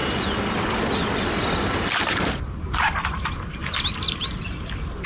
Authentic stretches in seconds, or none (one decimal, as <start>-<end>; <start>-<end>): 0.0-5.1